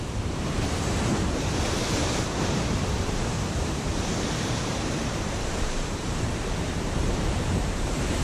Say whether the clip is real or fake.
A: fake